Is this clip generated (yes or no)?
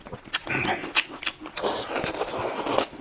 no